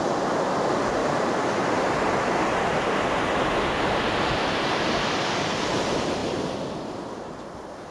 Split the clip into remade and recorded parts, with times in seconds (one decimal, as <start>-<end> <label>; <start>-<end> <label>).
0.0-1.0 recorded; 1.0-1.5 remade; 1.5-6.2 recorded; 6.2-6.8 remade; 6.8-7.9 recorded